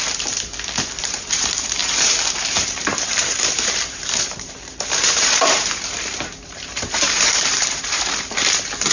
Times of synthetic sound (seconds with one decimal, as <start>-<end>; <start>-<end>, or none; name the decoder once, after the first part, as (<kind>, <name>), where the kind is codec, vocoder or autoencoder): 1.0-8.9 (vocoder, BigVGAN v2)